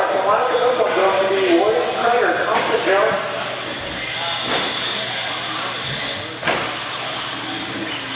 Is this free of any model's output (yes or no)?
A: yes